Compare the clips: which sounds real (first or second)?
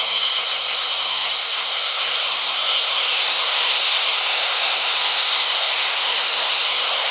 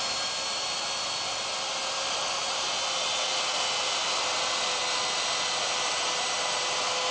second